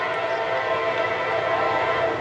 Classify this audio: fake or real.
real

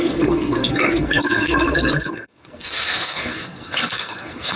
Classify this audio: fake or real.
fake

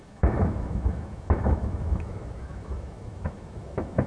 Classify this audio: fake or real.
fake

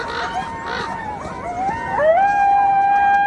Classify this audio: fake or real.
real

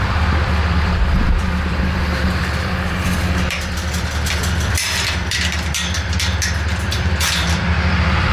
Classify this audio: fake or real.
fake